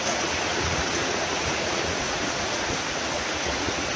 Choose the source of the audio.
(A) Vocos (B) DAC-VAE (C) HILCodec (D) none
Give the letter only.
A